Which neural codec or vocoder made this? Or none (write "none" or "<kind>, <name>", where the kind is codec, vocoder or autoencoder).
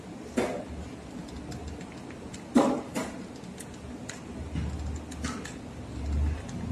none